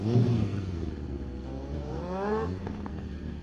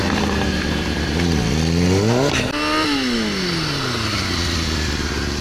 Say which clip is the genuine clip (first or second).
second